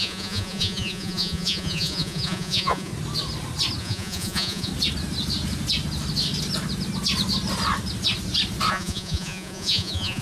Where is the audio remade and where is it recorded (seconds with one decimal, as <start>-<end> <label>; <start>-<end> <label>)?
0.0-2.9 remade; 2.9-3.8 recorded; 3.8-4.7 remade; 4.7-8.7 recorded; 8.7-10.2 remade